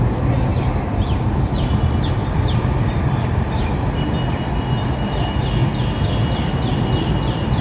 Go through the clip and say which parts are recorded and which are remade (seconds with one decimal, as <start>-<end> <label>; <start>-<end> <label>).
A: 0.0-0.5 recorded; 0.5-4.0 remade; 4.0-7.6 recorded